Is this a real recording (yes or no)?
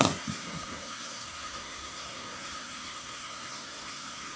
no